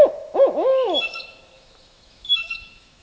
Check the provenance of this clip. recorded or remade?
remade